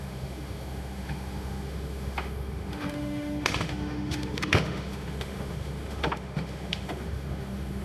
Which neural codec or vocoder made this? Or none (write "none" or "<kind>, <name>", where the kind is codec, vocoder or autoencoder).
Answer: autoencoder, DAC-VAE